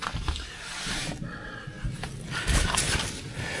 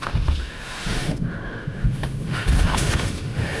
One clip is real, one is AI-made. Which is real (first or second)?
first